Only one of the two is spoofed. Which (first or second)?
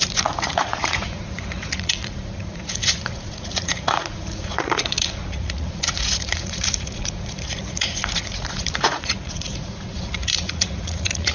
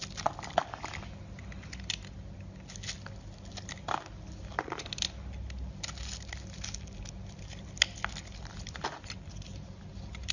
first